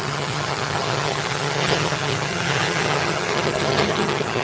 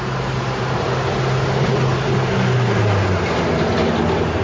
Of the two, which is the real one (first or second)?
second